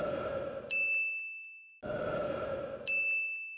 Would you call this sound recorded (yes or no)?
yes